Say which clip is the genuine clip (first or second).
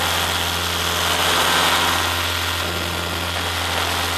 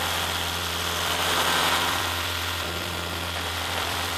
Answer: first